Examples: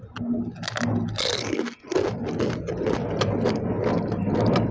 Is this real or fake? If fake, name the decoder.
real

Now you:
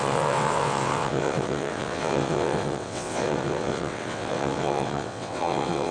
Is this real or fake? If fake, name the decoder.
fake, vocoder, WaveNeXt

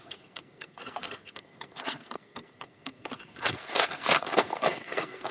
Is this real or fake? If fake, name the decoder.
fake, codec, SNAC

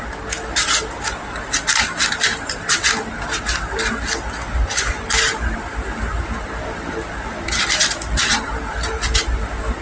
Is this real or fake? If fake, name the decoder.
real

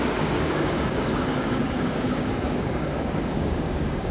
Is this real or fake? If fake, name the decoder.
fake, codec, DAC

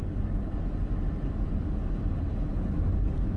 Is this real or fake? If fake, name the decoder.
real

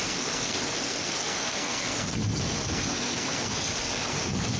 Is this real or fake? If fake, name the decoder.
fake, codec, SNAC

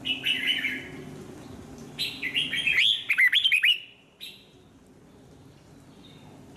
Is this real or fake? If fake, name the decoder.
real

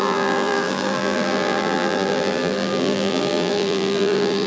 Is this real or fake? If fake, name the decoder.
fake, vocoder, BigVGAN v2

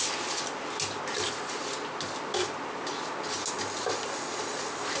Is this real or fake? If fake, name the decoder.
real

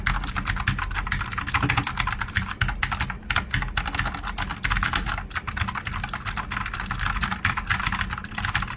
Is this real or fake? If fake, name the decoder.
real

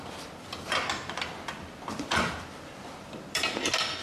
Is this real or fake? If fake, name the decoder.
fake, vocoder, BigVGAN v2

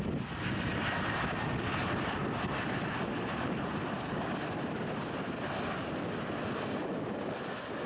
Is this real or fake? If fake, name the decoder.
real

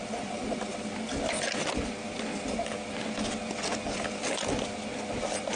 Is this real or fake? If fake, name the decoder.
real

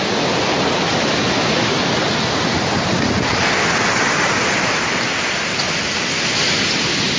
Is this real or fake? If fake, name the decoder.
real